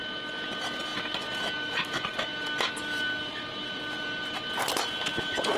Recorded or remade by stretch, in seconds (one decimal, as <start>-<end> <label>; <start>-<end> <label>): 0.0-5.6 recorded